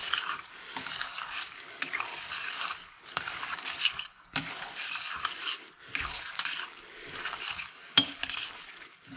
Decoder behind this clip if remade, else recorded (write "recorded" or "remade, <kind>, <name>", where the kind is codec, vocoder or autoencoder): remade, codec, DAC